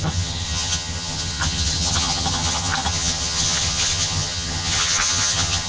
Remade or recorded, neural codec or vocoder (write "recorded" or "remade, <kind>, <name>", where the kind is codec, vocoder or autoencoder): remade, vocoder, HiFi-GAN